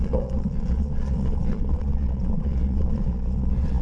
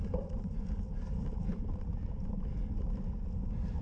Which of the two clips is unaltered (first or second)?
second